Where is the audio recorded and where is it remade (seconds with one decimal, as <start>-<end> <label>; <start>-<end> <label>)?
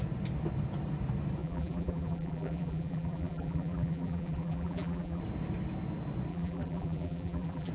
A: 0.0-1.4 recorded; 1.4-5.2 remade; 5.2-6.3 recorded; 6.3-7.7 remade